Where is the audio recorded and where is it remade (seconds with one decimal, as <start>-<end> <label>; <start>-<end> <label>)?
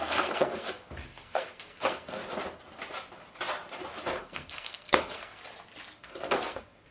0.0-2.2 remade; 2.2-4.2 recorded; 4.2-5.4 remade; 5.4-6.0 recorded; 6.0-6.9 remade